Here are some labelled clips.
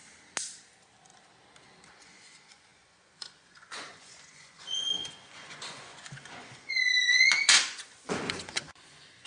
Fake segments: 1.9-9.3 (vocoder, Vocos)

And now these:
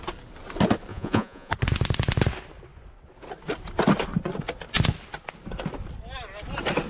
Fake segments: 0.9-1.5 (vocoder, Vocos)

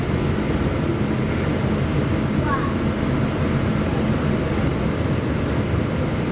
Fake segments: none